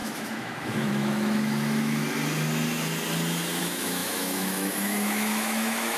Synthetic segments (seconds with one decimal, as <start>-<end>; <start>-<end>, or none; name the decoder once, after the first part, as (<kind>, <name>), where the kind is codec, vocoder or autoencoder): 0.0-2.0 (autoencoder, DAC-VAE); 3.6-6.0